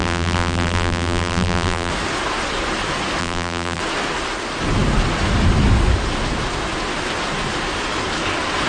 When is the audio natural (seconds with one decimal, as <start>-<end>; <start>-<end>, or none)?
1.9-3.2; 3.8-8.7